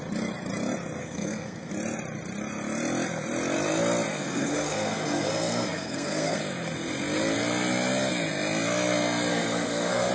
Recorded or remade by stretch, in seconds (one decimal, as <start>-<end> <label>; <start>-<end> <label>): 0.0-1.0 recorded; 1.0-1.7 remade; 1.7-4.1 recorded; 4.1-6.4 remade; 6.4-9.3 recorded; 9.3-10.1 remade

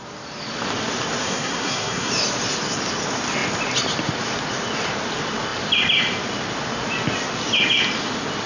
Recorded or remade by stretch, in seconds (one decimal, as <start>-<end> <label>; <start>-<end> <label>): 0.0-1.2 recorded; 1.2-2.1 remade; 2.1-8.5 recorded

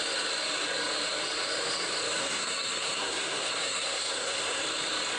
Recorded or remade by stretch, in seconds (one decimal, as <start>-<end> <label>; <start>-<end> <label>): 0.0-2.2 recorded; 2.2-4.6 remade; 4.6-5.2 recorded

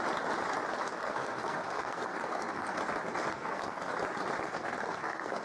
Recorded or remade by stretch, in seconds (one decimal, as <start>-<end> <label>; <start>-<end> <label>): 0.0-1.0 recorded; 1.0-2.8 remade; 2.8-3.3 recorded; 3.3-3.9 remade; 3.9-4.4 recorded; 4.4-5.4 remade

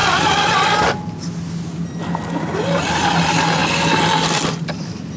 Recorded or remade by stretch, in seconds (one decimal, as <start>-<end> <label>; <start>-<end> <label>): 0.0-5.2 recorded

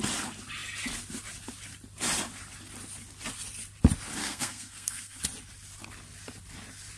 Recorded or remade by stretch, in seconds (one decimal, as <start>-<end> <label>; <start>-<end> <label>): 0.0-4.2 recorded; 4.2-5.2 remade; 5.2-7.0 recorded